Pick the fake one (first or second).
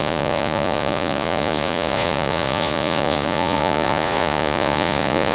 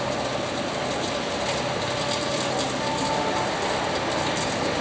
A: first